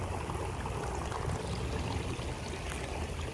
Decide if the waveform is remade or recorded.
recorded